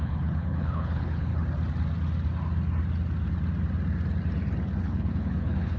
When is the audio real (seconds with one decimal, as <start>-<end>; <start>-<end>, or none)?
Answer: 1.3-4.8